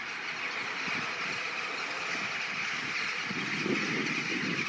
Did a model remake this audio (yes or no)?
no